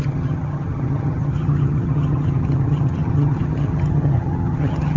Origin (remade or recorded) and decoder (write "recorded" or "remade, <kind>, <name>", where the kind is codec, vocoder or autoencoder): remade, vocoder, HiFi-GAN